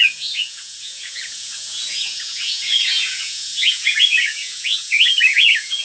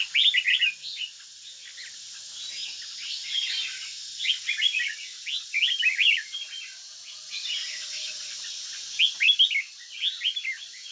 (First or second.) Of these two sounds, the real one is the second